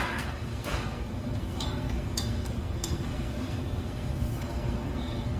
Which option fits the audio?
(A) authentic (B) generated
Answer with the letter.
B